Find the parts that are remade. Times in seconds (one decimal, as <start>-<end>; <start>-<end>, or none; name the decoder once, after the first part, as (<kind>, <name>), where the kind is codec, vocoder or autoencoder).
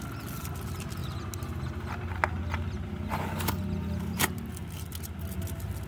none